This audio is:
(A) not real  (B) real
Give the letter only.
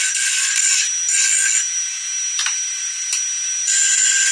B